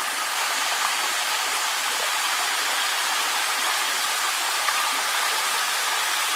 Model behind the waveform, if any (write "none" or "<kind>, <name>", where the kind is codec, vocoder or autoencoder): none